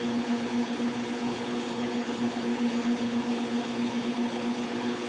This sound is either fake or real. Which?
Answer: fake